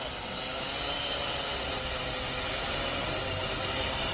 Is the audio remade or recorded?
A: recorded